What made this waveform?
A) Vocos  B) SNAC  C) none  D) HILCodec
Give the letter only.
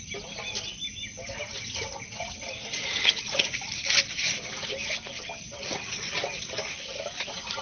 C